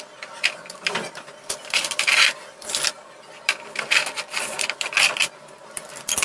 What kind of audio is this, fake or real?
real